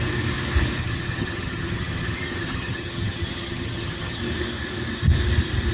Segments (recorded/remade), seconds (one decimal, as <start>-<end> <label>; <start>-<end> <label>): 0.0-0.8 recorded; 0.8-4.2 remade; 4.2-5.7 recorded